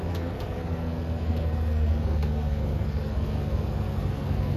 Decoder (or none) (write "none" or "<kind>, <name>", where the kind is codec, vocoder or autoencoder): codec, SNAC